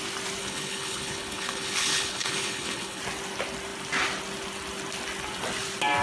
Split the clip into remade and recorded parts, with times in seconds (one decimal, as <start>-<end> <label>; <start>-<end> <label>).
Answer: 0.0-0.4 recorded; 0.4-3.0 remade; 3.0-6.0 recorded